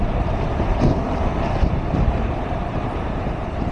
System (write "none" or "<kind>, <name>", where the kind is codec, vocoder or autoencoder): vocoder, BigVGAN v2